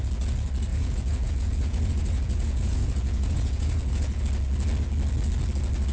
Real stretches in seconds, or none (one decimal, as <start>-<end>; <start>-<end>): 0.0-0.7; 4.2-5.9